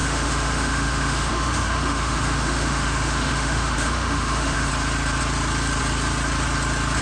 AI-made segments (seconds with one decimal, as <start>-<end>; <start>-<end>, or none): 0.0-4.7